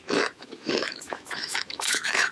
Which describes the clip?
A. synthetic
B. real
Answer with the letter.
A